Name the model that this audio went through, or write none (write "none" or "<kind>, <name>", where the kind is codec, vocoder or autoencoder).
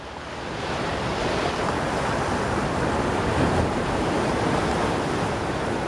none